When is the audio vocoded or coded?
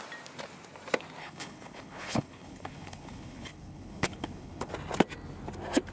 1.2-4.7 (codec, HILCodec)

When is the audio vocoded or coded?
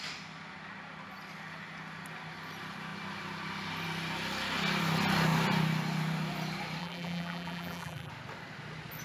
6.8-8.1 (vocoder, BigVGAN v2)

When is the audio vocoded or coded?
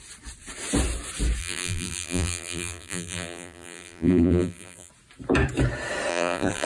1.4-4.9 (vocoder, BigVGAN v2); 6.1-6.7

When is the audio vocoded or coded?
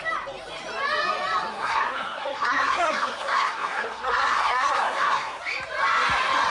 1.5-5.4 (codec, SNAC)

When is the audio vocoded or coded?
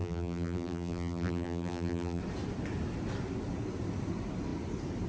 0.0-2.2 (vocoder, BigVGAN v2)